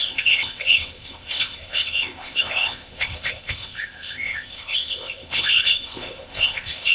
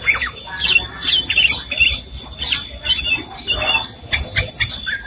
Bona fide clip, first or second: second